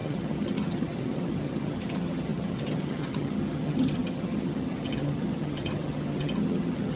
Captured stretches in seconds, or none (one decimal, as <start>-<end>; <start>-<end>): none